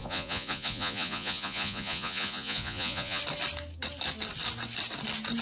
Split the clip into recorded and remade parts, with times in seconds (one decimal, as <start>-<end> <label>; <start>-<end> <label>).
0.0-3.2 remade; 3.2-5.4 recorded